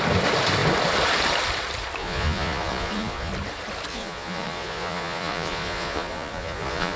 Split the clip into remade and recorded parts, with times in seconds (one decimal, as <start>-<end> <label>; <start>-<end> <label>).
0.0-2.0 recorded; 2.0-3.3 remade; 3.3-3.9 recorded; 3.9-7.0 remade